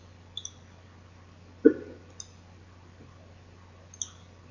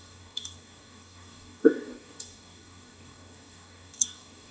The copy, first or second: second